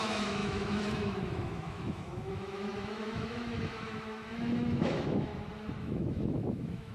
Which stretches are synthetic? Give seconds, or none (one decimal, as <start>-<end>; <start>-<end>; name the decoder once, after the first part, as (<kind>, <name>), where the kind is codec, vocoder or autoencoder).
0.0-5.3 (autoencoder, DAC-VAE); 5.8-6.9

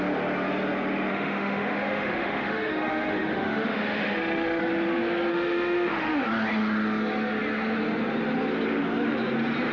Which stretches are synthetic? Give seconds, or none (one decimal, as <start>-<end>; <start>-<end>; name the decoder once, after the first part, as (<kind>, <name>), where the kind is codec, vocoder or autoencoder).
1.1-4.6 (autoencoder, DAC-VAE); 5.3-6.3

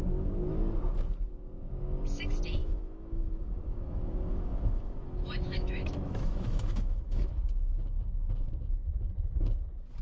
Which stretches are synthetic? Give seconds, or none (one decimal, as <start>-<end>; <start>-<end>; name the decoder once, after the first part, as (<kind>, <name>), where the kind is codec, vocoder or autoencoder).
2.6-7.3 (autoencoder, DAC-VAE)